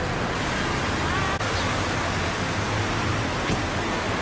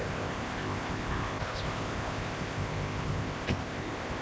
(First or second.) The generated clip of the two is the second